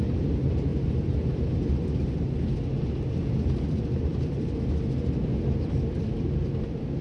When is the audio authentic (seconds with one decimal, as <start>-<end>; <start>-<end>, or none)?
0.0-7.0